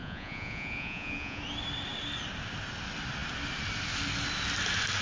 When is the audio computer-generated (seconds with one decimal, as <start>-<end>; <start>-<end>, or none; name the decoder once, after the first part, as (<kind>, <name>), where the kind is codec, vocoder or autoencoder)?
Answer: 0.0-1.4 (vocoder, Vocos)